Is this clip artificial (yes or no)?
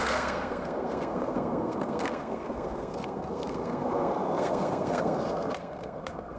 yes